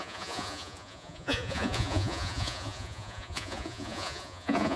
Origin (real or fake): fake